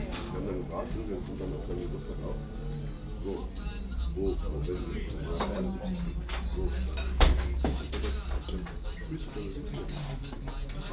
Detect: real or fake real